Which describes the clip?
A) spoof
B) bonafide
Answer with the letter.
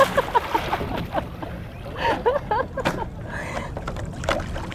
B